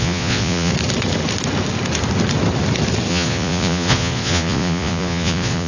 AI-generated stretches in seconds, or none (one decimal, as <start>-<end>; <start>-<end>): 0.0-0.7; 3.1-5.7